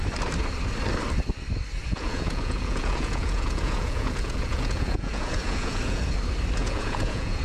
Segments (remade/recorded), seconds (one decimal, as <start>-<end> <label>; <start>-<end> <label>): 0.0-1.8 recorded; 1.8-6.0 remade; 6.0-6.6 recorded; 6.6-7.4 remade